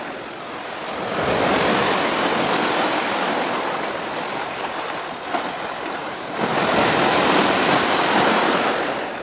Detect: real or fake real